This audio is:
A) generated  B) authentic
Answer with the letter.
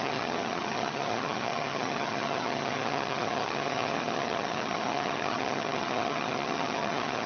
A